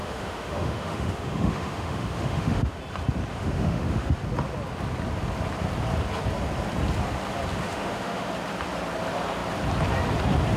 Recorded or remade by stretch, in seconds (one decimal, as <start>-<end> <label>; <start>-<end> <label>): 0.0-2.8 remade; 2.8-3.3 recorded; 3.3-4.2 remade; 4.2-7.6 recorded; 7.6-8.3 remade; 8.3-10.6 recorded